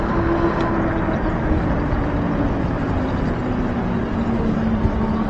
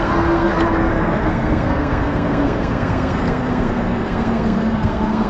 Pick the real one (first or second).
first